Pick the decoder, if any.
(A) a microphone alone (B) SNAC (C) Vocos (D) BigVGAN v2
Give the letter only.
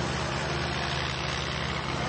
A